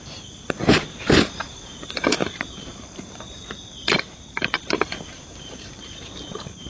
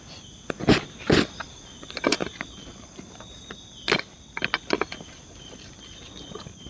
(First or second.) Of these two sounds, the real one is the second